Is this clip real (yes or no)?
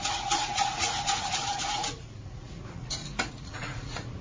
no